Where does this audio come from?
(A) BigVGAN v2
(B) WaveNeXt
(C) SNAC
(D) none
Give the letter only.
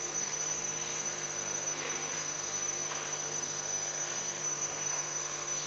C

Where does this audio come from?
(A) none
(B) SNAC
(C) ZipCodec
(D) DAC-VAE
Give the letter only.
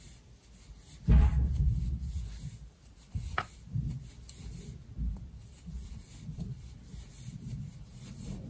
A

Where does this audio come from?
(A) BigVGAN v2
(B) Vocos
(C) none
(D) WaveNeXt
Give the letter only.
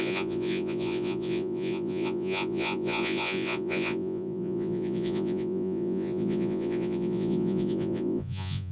B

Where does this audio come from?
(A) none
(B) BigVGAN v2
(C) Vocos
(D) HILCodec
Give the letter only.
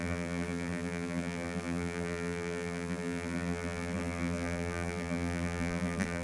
B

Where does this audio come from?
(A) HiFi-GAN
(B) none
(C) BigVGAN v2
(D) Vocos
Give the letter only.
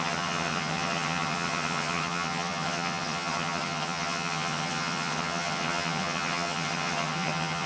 A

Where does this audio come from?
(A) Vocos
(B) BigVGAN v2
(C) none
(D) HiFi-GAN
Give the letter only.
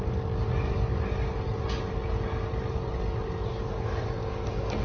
C